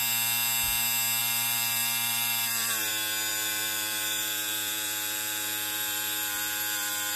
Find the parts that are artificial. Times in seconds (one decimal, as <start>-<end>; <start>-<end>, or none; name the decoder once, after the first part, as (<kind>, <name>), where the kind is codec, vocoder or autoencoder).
1.2-2.9 (vocoder, BigVGAN v2); 3.3-7.2